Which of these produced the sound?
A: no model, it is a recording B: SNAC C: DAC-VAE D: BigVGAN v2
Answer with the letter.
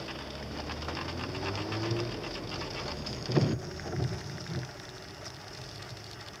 A